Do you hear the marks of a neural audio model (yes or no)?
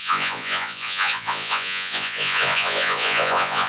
yes